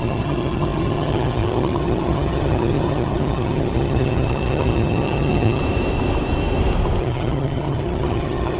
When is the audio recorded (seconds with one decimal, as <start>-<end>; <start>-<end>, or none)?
5.6-7.0